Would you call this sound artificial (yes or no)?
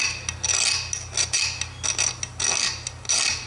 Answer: no